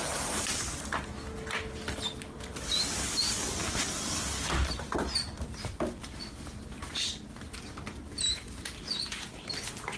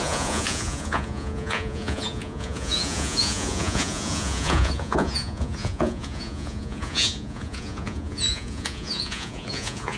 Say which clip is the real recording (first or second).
first